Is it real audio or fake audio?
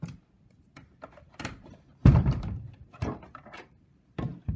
fake